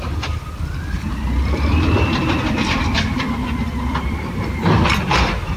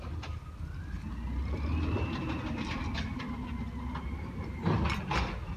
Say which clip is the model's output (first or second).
first